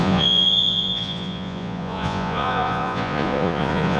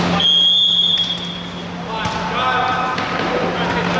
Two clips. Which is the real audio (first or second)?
second